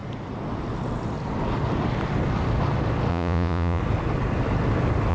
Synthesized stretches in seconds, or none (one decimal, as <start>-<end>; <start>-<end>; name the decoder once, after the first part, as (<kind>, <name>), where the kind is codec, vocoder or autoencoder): 3.1-3.8 (vocoder, Vocos)